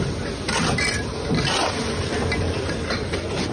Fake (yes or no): no